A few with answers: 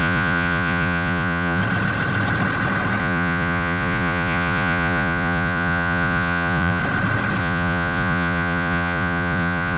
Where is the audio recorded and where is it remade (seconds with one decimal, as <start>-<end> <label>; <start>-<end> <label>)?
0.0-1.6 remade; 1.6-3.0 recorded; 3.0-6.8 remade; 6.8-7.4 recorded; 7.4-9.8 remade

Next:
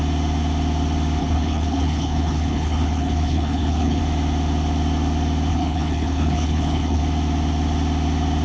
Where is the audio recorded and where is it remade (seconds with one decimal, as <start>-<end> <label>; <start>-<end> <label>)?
0.0-1.2 recorded; 1.2-4.0 remade; 4.0-5.5 recorded; 5.5-7.0 remade; 7.0-8.4 recorded

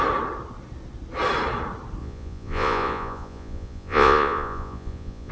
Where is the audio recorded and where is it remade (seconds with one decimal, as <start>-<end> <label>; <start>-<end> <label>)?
0.0-2.0 recorded; 2.0-5.3 remade

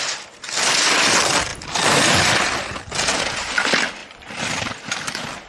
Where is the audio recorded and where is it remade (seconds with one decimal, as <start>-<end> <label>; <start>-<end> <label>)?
0.0-1.5 recorded; 1.5-2.8 remade; 2.8-4.0 recorded; 4.0-5.5 remade